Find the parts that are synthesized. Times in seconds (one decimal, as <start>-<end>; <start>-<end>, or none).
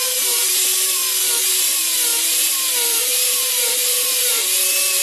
0.0-1.0; 1.5-5.0